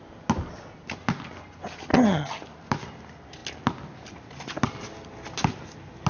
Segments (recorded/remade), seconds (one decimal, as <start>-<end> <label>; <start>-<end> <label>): 0.0-1.9 recorded; 1.9-2.4 remade; 2.4-6.1 recorded